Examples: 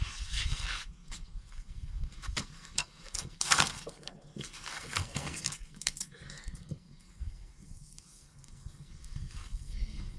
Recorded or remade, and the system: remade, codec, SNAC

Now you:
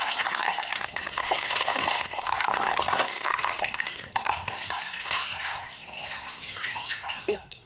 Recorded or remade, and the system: remade, codec, SNAC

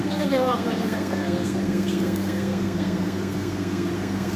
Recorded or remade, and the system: remade, codec, SNAC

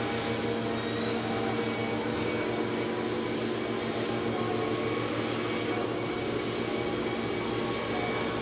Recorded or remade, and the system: recorded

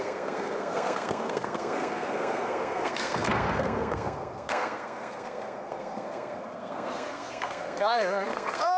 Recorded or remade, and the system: remade, codec, SNAC